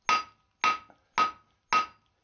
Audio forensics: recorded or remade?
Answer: recorded